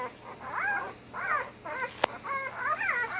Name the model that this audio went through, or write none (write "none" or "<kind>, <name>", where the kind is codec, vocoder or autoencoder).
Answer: none